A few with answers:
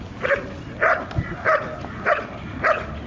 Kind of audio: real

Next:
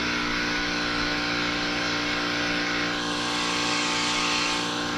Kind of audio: fake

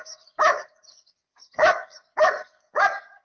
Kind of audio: fake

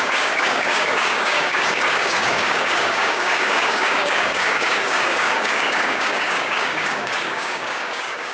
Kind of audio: fake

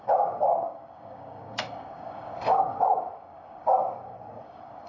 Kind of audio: fake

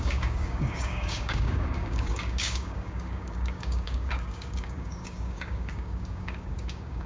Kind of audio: fake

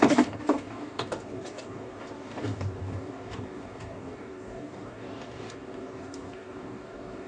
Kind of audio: fake